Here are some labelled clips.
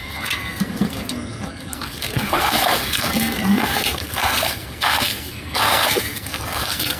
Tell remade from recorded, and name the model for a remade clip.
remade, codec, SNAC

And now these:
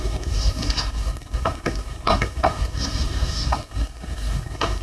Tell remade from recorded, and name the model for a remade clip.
remade, codec, SNAC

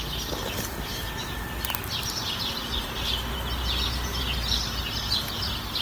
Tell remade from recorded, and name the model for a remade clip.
recorded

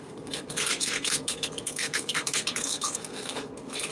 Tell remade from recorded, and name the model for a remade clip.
remade, codec, SNAC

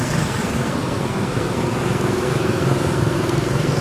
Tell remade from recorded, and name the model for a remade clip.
remade, codec, SNAC